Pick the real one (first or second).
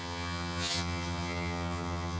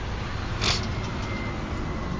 second